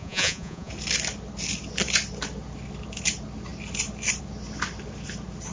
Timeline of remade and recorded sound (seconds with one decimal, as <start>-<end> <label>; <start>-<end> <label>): 0.0-0.7 remade; 0.7-5.5 recorded